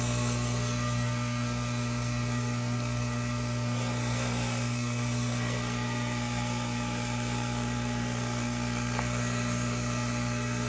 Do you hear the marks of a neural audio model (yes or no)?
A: yes